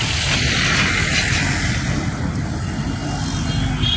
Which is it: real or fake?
real